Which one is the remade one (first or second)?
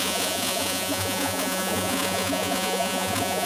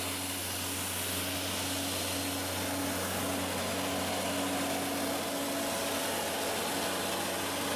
first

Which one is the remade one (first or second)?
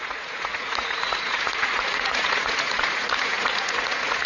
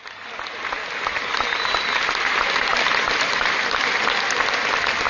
first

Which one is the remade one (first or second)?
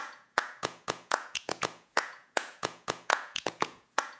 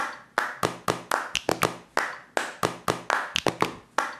first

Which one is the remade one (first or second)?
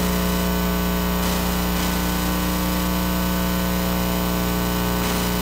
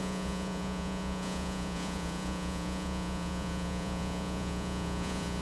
second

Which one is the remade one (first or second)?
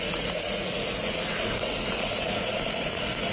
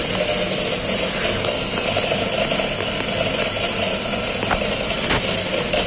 first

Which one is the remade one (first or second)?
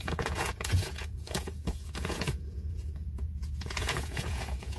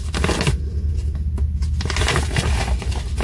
first